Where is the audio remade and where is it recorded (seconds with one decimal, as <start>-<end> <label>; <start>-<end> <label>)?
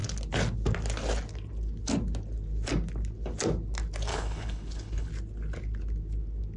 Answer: 0.0-4.1 recorded; 4.1-5.1 remade; 5.1-6.6 recorded